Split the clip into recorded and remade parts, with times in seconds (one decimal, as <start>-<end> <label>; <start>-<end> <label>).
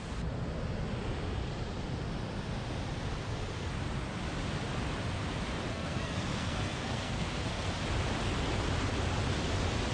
0.0-5.7 recorded; 5.7-7.7 remade; 7.7-9.9 recorded